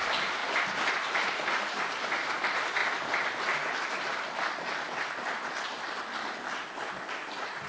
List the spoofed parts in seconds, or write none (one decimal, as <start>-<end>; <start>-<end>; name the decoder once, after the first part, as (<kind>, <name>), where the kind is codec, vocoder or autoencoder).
0.0-0.4 (vocoder, BigVGAN v2); 0.9-2.8